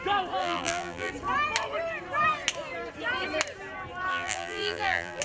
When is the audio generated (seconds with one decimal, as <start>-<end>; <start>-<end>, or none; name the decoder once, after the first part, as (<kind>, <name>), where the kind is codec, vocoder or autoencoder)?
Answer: 0.4-1.1 (vocoder, BigVGAN v2); 4.1-5.2